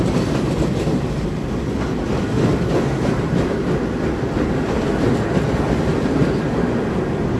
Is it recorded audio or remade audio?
recorded